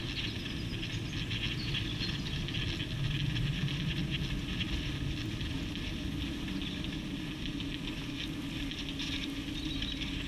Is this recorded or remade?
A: recorded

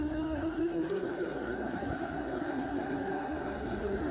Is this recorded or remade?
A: remade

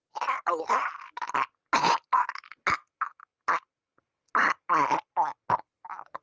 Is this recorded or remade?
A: recorded